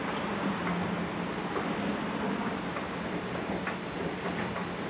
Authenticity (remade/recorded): recorded